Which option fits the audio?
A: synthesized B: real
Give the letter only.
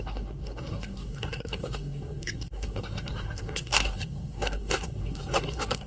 A